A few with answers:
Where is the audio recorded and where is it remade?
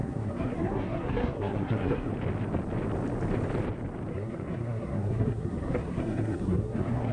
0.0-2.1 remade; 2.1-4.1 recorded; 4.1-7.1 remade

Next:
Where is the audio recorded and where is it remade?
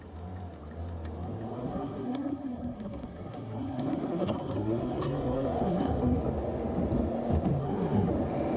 0.0-1.5 recorded; 1.5-6.2 remade; 6.2-7.6 recorded; 7.6-8.1 remade; 8.1-8.6 recorded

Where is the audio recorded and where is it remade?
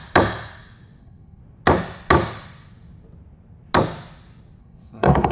0.0-1.0 recorded; 1.0-1.4 remade; 1.4-4.6 recorded; 4.6-5.3 remade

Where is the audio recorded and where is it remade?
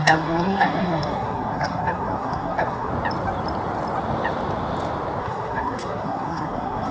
0.0-2.9 remade; 2.9-5.2 recorded; 5.2-6.9 remade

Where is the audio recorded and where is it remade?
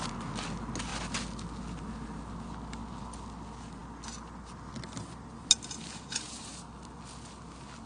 0.0-7.9 recorded